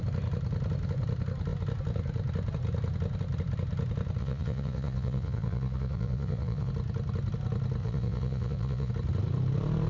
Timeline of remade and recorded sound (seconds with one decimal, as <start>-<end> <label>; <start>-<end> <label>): 0.0-4.2 recorded; 4.2-6.7 remade; 6.7-7.8 recorded; 7.8-8.9 remade; 8.9-9.9 recorded